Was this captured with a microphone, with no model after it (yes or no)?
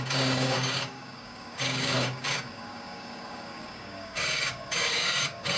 no